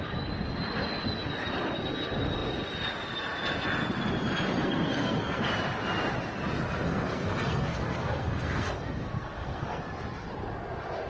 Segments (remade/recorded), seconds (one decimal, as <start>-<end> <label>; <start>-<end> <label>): 0.0-4.6 recorded; 4.6-5.5 remade; 5.5-6.8 recorded; 6.8-9.8 remade; 9.8-11.1 recorded